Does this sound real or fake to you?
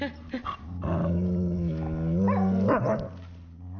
real